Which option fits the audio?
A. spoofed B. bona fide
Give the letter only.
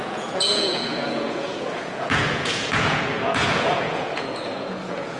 A